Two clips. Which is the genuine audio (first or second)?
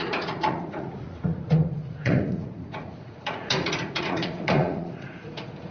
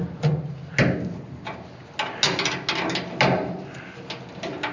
second